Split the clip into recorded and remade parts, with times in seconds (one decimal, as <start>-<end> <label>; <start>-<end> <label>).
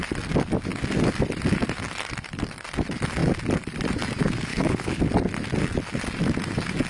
0.0-4.5 recorded; 4.5-5.0 remade; 5.0-6.9 recorded